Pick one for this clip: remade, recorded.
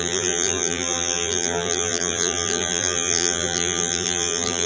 remade